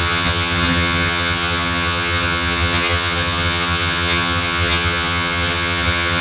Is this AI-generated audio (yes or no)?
yes